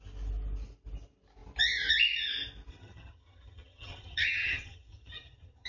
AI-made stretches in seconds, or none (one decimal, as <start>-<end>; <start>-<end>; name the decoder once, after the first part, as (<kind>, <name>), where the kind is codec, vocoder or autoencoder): 2.7-5.7 (vocoder, HiFi-GAN)